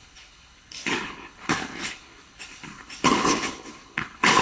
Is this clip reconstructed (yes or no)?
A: yes